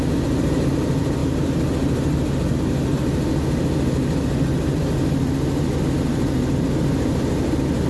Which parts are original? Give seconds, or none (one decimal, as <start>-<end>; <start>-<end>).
0.0-7.9